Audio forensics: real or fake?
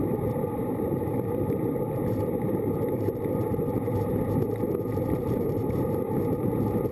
fake